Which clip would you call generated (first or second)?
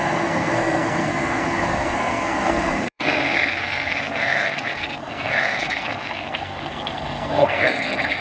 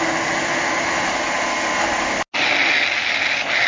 first